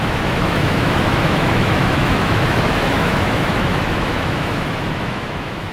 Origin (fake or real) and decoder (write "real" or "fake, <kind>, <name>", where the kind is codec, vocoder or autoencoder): fake, autoencoder, DAC-VAE